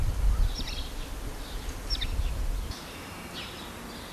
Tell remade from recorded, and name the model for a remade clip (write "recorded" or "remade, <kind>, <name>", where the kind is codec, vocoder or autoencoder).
recorded